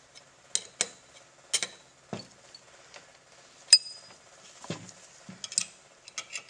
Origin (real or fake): real